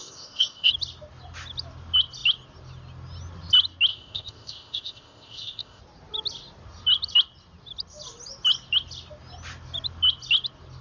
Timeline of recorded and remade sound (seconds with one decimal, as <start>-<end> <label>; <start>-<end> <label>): 0.0-0.7 remade; 0.7-3.9 recorded; 3.9-5.8 remade; 5.8-10.8 recorded